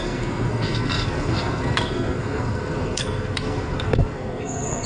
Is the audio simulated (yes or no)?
yes